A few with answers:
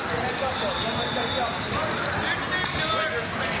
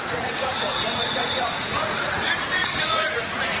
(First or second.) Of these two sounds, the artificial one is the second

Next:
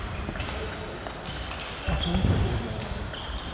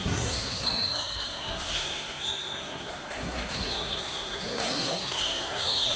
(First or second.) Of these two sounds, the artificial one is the second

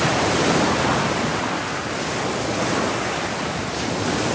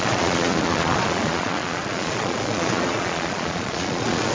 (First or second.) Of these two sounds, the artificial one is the second